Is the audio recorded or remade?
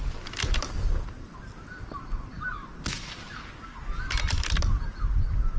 recorded